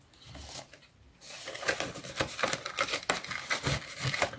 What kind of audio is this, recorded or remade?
recorded